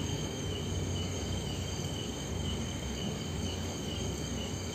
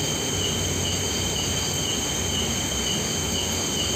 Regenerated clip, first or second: first